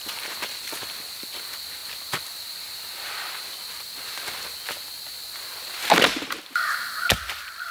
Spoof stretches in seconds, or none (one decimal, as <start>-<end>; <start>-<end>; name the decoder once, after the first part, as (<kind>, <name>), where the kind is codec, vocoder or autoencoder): none